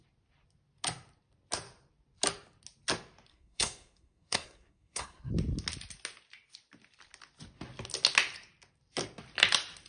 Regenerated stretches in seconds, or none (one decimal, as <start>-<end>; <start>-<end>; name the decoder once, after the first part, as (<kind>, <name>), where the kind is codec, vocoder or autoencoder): 3.3-5.3 (codec, SNAC)